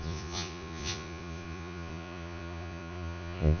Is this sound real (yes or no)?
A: no